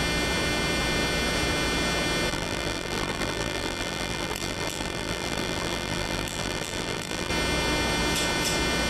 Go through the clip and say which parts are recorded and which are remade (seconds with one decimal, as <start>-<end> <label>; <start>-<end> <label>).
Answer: 0.0-2.3 recorded; 2.3-7.3 remade; 7.3-8.9 recorded